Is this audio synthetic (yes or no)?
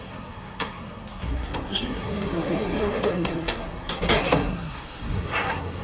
yes